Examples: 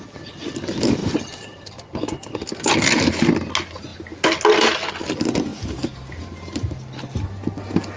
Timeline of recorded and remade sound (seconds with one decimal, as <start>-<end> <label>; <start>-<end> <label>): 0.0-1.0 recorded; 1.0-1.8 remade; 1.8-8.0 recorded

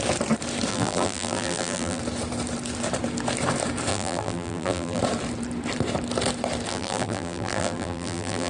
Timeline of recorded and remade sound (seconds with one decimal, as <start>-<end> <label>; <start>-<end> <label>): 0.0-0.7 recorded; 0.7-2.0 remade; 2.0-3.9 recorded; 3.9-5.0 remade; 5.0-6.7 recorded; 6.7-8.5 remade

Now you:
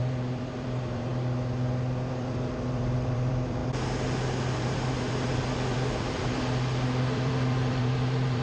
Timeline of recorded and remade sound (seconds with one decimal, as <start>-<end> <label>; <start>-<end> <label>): 0.0-1.1 remade; 1.1-2.1 recorded; 2.1-3.6 remade; 3.6-4.4 recorded; 4.4-8.4 remade

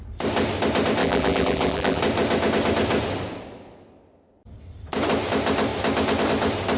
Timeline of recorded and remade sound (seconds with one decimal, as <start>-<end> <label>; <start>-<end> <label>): 0.0-1.0 recorded; 1.0-2.0 remade; 2.0-6.8 recorded

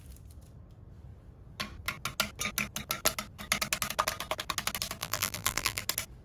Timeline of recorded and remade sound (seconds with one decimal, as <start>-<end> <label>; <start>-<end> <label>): 0.0-5.0 recorded; 5.0-5.8 remade; 5.8-6.2 recorded

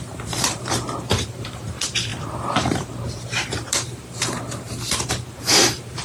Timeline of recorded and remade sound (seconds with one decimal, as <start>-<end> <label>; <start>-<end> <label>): 0.0-6.0 remade

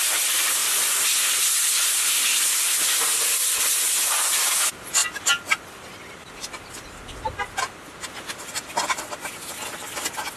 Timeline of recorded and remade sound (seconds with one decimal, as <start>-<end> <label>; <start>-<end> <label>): 0.0-10.4 recorded